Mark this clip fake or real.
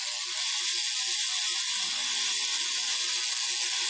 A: real